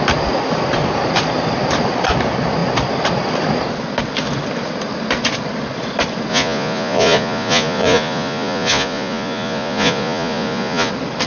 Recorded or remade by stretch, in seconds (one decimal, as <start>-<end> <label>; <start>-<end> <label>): 0.0-6.3 recorded; 6.3-10.9 remade; 10.9-11.3 recorded